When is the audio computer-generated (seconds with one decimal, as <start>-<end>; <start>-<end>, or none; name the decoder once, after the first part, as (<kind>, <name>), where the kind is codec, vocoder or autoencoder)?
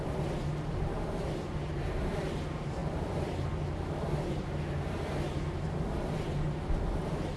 2.8-3.5 (vocoder, BigVGAN v2)